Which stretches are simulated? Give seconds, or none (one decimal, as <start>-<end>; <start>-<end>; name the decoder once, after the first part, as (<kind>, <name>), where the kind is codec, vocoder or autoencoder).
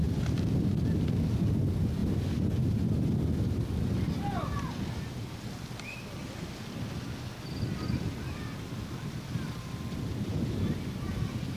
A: none